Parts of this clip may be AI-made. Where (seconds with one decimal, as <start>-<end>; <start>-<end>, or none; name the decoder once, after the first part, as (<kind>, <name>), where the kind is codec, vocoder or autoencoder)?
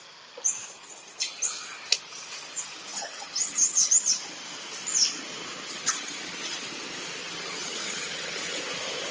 2.9-4.2 (vocoder, HiFi-GAN); 5.7-6.7; 7.2-8.6